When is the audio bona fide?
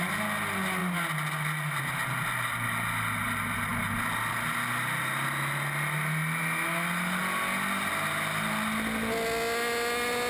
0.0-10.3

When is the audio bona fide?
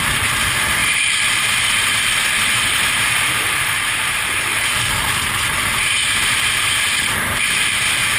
0.0-0.8; 4.1-4.5; 6.5-8.2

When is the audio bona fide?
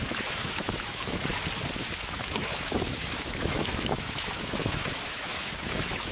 1.3-2.1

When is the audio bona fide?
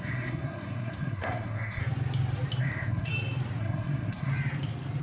1.8-2.6; 3.1-3.6; 4.3-5.0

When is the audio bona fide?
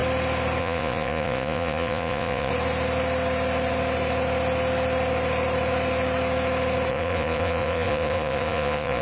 0.0-0.6; 2.5-6.9